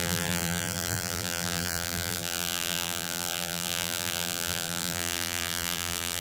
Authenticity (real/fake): fake